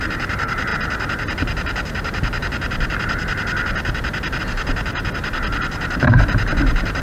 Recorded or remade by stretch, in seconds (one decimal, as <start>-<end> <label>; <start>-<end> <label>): 0.0-7.0 recorded

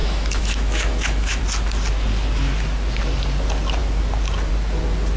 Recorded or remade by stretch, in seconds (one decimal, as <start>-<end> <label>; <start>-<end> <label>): 0.0-1.4 remade; 1.4-5.2 recorded

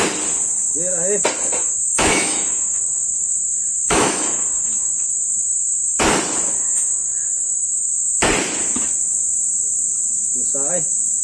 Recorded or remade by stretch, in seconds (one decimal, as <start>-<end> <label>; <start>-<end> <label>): 0.0-1.6 recorded; 1.6-6.0 remade; 6.0-6.6 recorded; 6.6-8.2 remade; 8.2-11.2 recorded

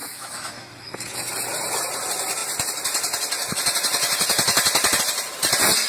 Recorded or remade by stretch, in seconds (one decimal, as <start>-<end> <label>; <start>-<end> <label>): 0.0-1.3 remade; 1.3-5.9 recorded

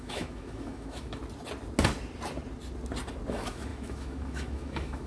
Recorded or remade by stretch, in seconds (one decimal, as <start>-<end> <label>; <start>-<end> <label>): 0.0-1.2 remade; 1.2-3.3 recorded; 3.3-5.1 remade

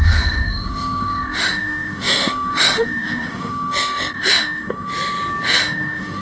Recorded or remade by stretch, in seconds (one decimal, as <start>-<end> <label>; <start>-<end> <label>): 0.0-4.9 remade; 4.9-5.6 recorded; 5.6-6.2 remade